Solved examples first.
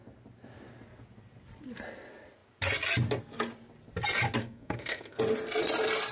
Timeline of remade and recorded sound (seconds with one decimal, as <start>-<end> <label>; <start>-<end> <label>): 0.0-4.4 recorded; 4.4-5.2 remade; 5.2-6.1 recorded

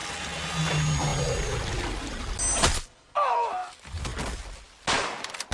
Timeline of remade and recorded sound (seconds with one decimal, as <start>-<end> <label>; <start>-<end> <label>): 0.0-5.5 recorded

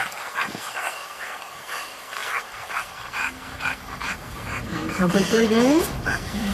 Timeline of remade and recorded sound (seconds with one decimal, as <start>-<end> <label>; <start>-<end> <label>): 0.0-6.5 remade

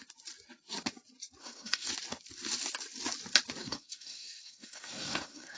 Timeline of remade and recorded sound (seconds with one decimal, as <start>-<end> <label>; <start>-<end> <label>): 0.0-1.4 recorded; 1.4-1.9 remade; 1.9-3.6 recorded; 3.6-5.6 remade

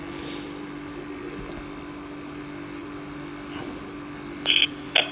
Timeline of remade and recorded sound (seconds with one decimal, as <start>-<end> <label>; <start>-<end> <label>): 0.0-5.1 recorded

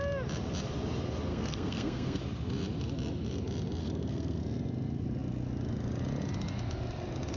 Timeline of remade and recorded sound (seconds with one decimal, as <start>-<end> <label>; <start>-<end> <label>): 0.0-1.3 recorded; 1.3-2.2 remade; 2.2-3.8 recorded; 3.8-4.4 remade; 4.4-7.4 recorded